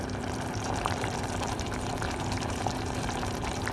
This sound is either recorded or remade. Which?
remade